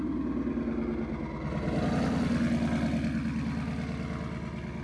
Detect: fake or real real